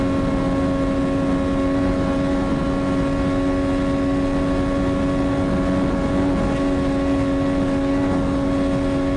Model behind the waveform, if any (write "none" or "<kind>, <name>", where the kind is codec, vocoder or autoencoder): none